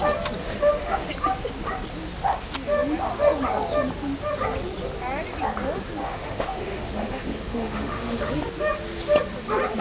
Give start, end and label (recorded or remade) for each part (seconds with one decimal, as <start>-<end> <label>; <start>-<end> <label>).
0.0-0.4 recorded; 0.4-1.1 remade; 1.1-6.0 recorded; 6.0-8.3 remade; 8.3-9.8 recorded